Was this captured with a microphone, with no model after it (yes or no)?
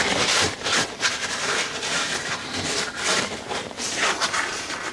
no